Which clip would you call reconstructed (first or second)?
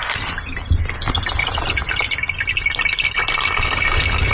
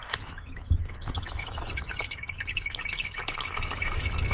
second